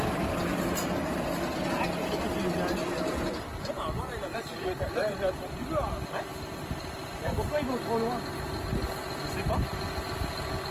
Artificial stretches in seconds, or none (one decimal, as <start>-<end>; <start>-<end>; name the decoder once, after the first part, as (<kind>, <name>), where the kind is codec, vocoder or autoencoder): 4.3-4.9 (vocoder, BigVGAN v2)